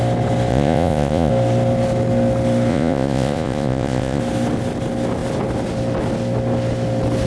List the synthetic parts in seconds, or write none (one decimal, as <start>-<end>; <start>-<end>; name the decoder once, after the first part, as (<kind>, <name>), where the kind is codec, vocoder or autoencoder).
0.5-1.3 (vocoder, Vocos); 2.7-4.2